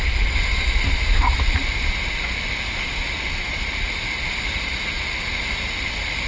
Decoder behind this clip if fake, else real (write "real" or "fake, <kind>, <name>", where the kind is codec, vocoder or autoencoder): real